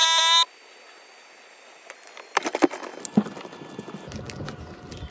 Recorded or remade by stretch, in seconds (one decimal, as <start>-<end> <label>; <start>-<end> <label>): 0.0-5.1 recorded